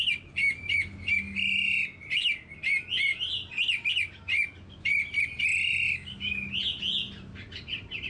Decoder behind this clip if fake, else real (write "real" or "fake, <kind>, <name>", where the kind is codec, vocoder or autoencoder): real